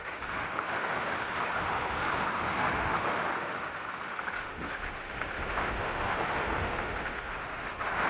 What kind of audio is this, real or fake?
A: fake